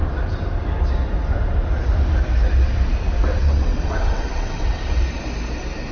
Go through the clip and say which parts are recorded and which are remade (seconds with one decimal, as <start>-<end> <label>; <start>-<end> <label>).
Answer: 0.0-3.3 recorded; 3.3-5.1 remade; 5.1-5.9 recorded